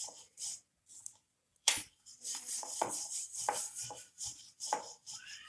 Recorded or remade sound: remade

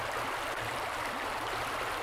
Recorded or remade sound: recorded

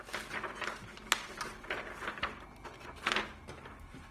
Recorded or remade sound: recorded